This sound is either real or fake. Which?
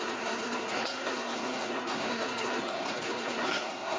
fake